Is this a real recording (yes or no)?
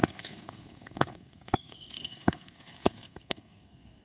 no